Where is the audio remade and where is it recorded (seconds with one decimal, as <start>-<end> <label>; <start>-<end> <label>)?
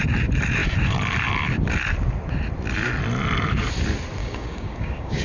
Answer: 0.0-4.2 recorded; 4.2-5.2 remade